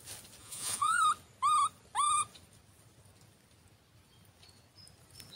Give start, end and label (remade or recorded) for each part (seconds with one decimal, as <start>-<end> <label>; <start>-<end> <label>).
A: 0.0-0.4 recorded; 0.4-1.0 remade; 1.0-5.4 recorded